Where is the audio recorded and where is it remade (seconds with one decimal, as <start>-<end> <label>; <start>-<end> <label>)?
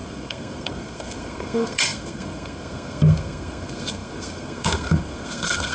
0.0-5.7 remade